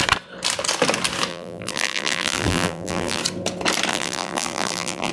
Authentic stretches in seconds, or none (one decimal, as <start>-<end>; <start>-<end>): 0.0-1.3; 3.2-3.9